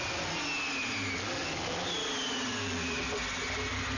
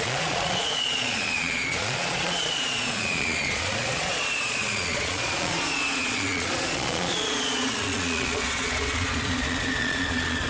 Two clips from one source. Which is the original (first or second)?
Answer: first